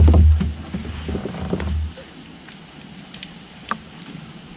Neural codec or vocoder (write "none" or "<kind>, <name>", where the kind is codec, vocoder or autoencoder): none